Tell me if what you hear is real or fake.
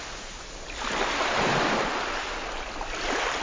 real